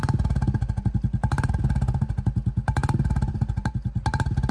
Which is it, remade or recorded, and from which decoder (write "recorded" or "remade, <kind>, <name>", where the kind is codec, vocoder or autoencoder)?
recorded